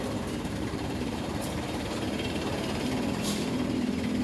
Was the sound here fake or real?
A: fake